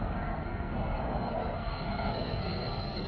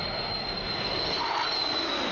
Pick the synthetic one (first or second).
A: first